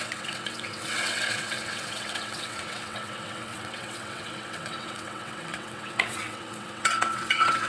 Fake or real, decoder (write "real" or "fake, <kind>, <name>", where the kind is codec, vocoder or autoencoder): fake, vocoder, WaveNeXt